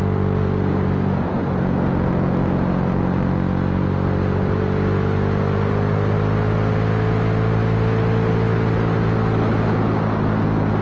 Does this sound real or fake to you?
real